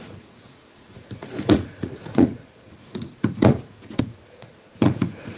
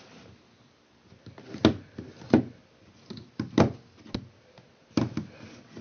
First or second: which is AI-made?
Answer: first